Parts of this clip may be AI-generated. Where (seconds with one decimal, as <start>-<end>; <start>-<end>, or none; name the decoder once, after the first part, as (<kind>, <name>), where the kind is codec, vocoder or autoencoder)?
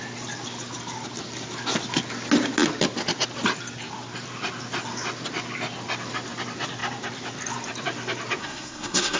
8.4-9.2 (codec, SNAC)